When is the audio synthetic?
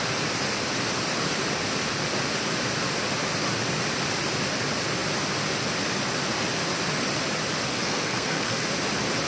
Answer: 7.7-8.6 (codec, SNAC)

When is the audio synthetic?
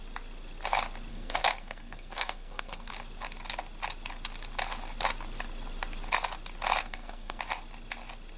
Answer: 1.1-2.9 (codec, SNAC); 6.8-7.4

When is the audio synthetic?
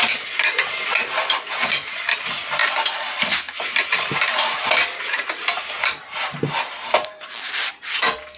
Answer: 2.6-7.5 (vocoder, BigVGAN v2)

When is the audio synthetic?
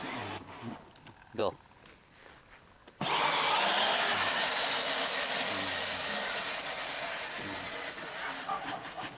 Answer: none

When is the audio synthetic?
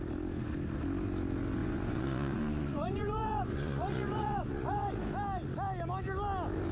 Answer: 1.6-4.9 (vocoder, Vocos)